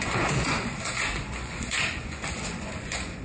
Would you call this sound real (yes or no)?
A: no